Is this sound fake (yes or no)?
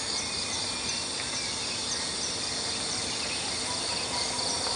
no